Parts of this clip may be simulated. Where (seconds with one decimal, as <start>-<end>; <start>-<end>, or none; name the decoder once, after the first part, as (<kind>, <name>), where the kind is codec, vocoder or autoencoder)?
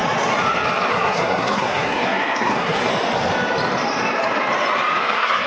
0.9-2.9 (codec, SNAC); 5.0-5.5